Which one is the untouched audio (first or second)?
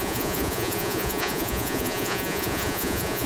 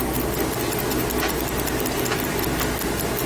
second